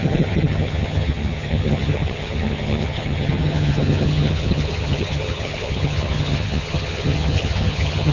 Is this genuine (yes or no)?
no